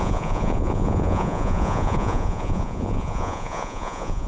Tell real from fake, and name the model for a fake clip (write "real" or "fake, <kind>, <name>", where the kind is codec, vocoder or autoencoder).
fake, vocoder, Vocos